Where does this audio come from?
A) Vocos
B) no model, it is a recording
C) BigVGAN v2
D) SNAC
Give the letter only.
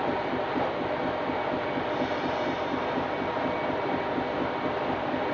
B